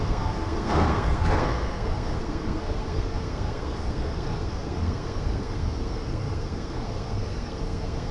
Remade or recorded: remade